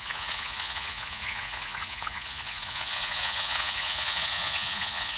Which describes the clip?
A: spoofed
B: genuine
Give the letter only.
A